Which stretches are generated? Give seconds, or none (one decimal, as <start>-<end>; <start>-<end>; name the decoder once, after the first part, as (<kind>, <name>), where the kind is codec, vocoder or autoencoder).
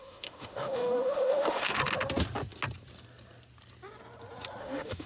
0.0-1.8 (autoencoder, DAC-VAE); 4.6-5.1